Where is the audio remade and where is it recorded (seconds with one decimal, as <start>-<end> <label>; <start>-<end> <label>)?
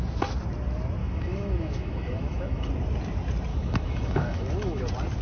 0.0-1.0 recorded; 1.0-2.7 remade; 2.7-3.5 recorded; 3.5-4.8 remade; 4.8-5.2 recorded